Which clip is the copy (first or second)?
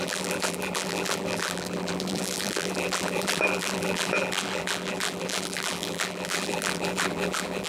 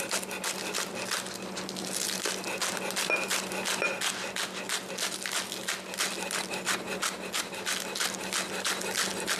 first